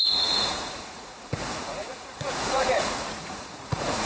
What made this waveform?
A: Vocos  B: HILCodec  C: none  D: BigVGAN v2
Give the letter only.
A